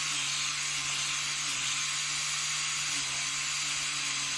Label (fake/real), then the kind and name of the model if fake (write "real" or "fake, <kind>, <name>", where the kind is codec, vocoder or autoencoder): real